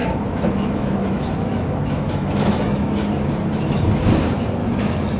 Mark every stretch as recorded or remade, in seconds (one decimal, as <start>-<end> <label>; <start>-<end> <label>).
0.0-3.1 remade; 3.1-4.6 recorded; 4.6-5.2 remade